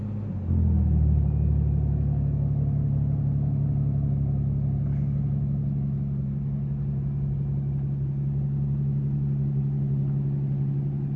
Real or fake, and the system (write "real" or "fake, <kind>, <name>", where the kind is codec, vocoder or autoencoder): real